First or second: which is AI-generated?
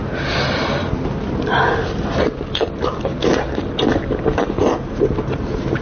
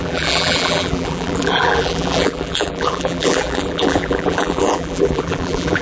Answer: second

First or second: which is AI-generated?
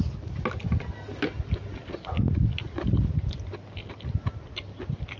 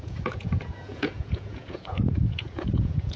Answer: second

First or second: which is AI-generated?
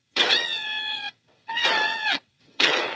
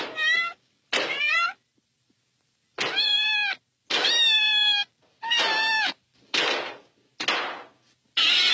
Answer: first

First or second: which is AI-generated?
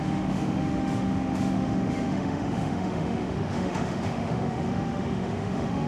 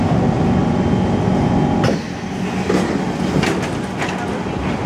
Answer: first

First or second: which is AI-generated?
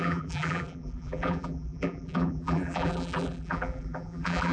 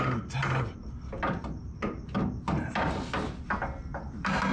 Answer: first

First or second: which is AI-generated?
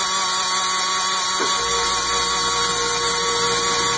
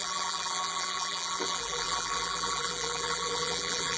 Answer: second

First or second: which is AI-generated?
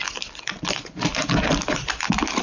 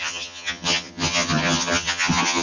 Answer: second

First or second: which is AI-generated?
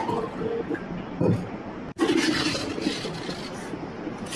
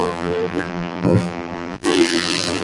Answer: second